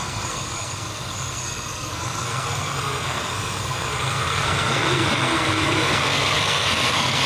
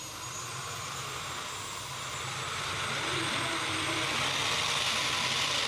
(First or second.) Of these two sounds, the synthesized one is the first